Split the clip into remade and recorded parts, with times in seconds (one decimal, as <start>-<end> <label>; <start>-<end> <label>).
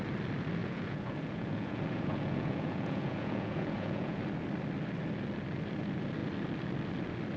0.0-0.6 recorded; 0.6-4.2 remade; 4.2-7.4 recorded